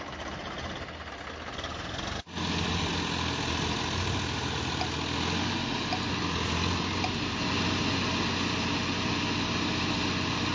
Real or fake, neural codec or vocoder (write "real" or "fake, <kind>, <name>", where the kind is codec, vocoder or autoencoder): real